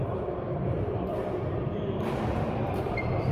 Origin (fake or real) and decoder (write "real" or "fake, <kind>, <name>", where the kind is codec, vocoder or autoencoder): fake, vocoder, BigVGAN v2